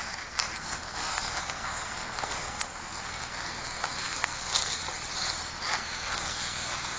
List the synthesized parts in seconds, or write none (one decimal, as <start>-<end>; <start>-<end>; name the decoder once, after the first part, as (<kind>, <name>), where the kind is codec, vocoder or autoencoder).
0.0-4.8 (codec, SNAC); 5.6-7.0